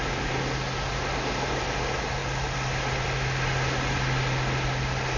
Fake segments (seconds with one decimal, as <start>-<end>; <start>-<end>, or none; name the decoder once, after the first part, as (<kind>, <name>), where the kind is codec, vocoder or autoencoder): none